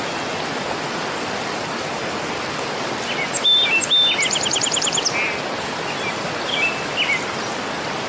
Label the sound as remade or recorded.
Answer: recorded